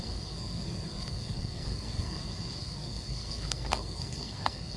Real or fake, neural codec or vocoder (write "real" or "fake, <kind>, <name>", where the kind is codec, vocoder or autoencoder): fake, codec, SNAC